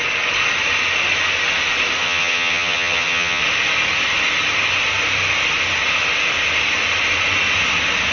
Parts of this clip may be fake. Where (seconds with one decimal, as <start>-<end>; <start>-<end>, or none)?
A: 2.0-3.4